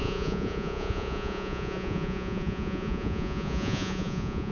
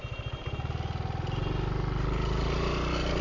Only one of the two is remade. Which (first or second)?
first